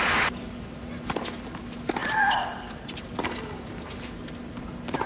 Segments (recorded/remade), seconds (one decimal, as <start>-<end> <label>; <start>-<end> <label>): 0.0-5.1 recorded